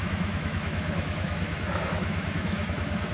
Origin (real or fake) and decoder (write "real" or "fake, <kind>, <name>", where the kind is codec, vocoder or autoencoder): fake, autoencoder, DAC-VAE